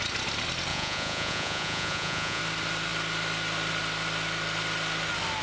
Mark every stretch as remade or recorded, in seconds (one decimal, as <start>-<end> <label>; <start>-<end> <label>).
0.0-0.7 recorded; 0.7-2.4 remade; 2.4-5.4 recorded